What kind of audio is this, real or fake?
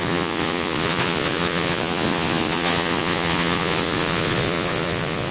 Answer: fake